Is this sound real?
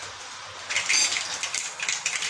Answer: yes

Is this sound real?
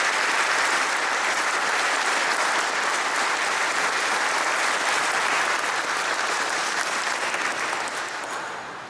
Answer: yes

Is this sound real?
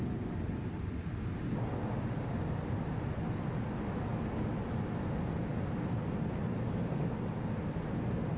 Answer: yes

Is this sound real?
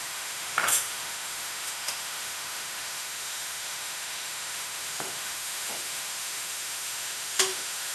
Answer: no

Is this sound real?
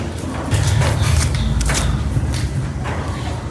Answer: yes